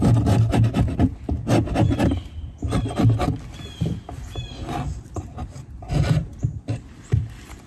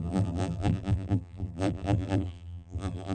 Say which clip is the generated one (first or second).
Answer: second